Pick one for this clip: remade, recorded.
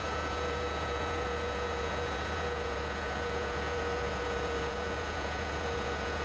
remade